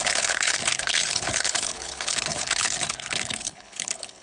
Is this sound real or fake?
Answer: fake